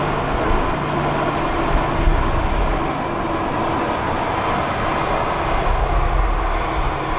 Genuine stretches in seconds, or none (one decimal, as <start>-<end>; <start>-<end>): 0.0-7.2